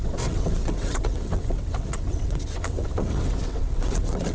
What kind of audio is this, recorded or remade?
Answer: remade